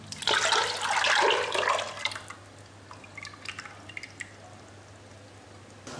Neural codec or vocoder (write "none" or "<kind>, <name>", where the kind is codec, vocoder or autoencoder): none